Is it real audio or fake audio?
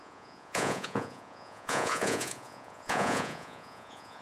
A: fake